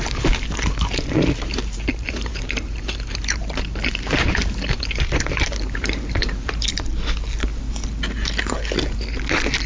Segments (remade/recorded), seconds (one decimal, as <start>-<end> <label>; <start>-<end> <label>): 0.0-6.9 remade; 6.9-9.7 recorded